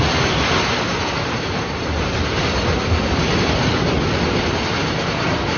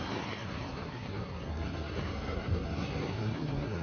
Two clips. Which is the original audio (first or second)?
first